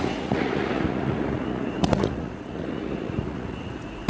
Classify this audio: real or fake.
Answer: fake